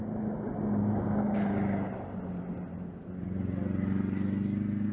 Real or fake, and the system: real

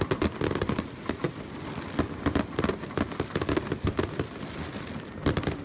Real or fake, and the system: real